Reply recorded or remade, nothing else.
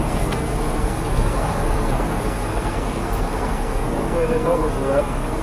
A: remade